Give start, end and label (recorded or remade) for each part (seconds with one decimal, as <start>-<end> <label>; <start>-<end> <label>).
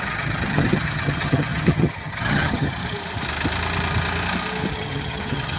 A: 0.0-2.8 remade; 2.8-4.7 recorded; 4.7-5.6 remade